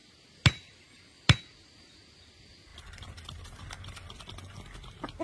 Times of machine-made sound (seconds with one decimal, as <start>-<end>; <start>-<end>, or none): 2.7-4.2